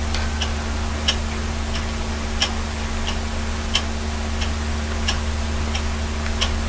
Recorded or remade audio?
recorded